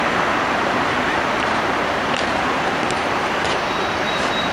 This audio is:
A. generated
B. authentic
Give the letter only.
A